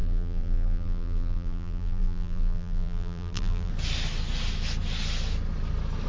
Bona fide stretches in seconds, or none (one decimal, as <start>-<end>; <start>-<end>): 3.7-6.1

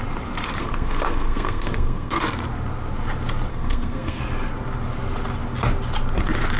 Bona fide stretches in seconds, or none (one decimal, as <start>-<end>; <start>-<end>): 0.0-0.6; 2.2-3.5; 4.2-6.6

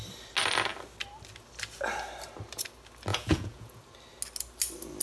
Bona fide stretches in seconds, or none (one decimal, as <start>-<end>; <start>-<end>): 0.0-3.1; 3.8-5.0

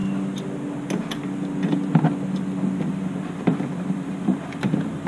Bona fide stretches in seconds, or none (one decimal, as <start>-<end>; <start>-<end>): 0.0-2.9

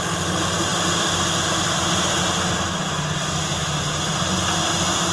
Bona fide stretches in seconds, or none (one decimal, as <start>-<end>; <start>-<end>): 0.0-5.1

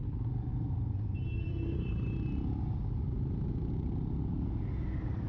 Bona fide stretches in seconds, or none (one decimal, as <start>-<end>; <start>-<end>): 0.0-0.5; 3.7-5.3